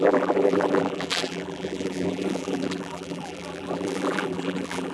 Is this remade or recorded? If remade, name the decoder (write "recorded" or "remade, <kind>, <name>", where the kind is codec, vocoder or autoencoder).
remade, vocoder, BigVGAN v2